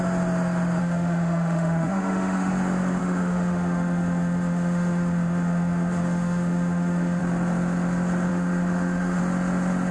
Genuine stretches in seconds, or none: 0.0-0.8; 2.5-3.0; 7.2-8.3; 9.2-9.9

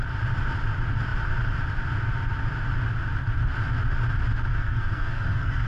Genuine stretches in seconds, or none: 0.0-4.5

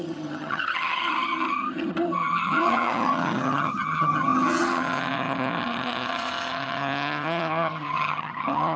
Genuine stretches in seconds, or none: none

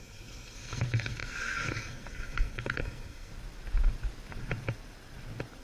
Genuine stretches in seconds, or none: 3.3-5.6

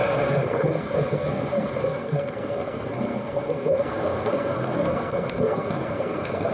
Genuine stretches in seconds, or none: none

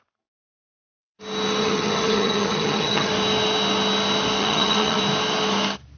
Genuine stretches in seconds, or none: 0.0-1.6; 3.1-4.4; 5.0-6.0

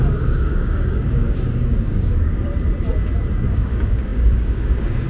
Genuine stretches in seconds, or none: 2.5-3.3

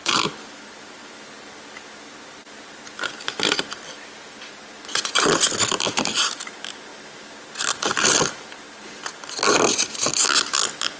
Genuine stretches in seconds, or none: 0.0-11.0